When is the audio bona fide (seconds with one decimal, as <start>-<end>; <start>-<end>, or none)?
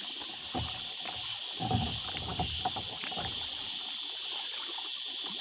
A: 0.0-5.4